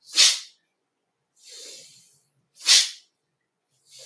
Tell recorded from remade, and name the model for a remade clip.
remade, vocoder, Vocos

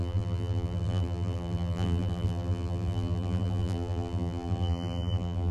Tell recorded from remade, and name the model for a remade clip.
remade, vocoder, BigVGAN v2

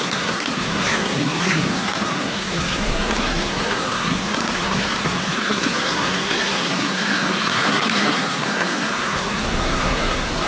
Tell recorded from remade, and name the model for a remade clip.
remade, codec, SNAC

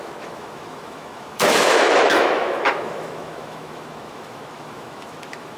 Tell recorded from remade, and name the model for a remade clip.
remade, autoencoder, DAC-VAE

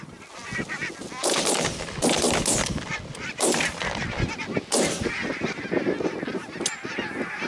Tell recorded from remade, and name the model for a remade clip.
recorded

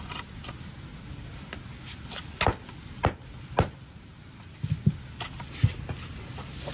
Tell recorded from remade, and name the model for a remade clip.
recorded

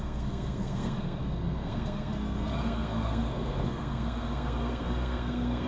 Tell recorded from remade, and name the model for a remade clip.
remade, codec, SNAC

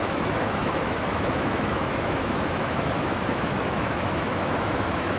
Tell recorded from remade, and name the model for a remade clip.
remade, autoencoder, DAC-VAE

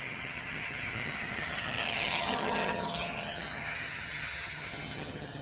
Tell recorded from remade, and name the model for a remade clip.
remade, vocoder, HiFi-GAN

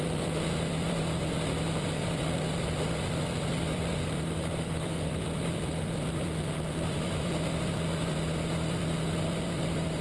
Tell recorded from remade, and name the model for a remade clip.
remade, vocoder, BigVGAN v2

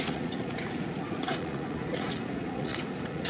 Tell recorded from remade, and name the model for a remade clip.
remade, vocoder, Vocos